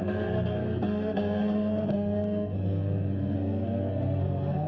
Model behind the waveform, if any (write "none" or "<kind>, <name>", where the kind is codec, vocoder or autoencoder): codec, SNAC